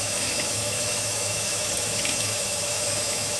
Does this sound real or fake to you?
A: fake